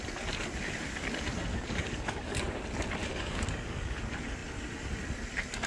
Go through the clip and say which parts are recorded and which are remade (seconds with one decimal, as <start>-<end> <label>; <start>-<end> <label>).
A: 0.0-1.5 recorded; 1.5-2.6 remade; 2.6-3.0 recorded; 3.0-4.0 remade; 4.0-5.7 recorded